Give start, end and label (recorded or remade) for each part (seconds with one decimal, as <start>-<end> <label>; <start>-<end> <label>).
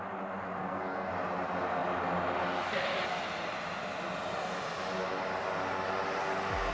0.0-0.6 recorded; 0.6-1.1 remade; 1.1-6.7 recorded